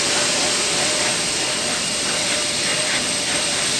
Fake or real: real